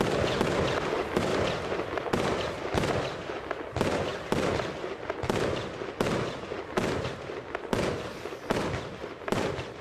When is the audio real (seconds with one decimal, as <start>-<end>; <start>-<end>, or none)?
0.0-1.3; 3.4-9.0